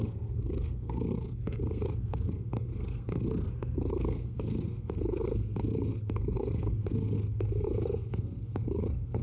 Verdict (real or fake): fake